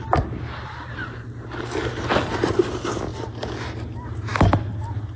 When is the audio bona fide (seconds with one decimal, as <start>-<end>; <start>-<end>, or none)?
0.0-5.2